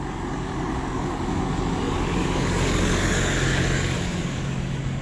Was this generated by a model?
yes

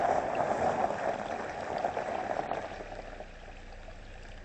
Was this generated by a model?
no